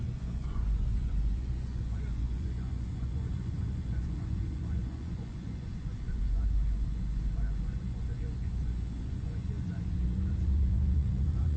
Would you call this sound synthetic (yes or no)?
yes